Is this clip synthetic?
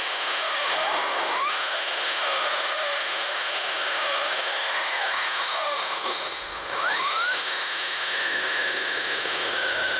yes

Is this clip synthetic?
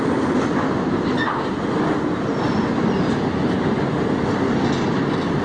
no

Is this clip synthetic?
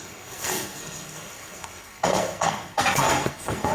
yes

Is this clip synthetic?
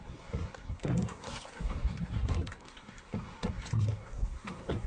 yes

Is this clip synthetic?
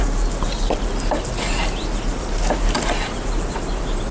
no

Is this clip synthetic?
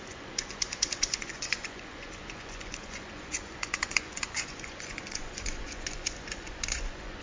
yes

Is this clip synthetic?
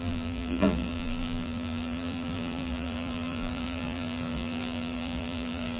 yes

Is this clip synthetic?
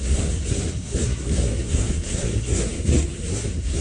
yes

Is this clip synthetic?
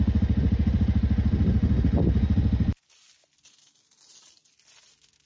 no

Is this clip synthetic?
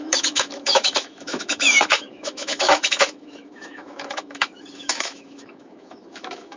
yes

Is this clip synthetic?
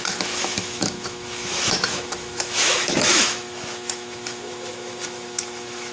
yes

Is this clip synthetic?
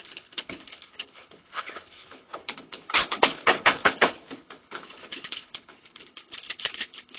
yes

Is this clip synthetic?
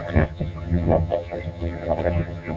yes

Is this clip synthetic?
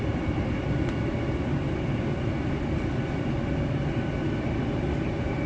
no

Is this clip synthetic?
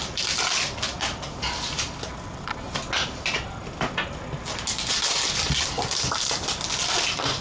no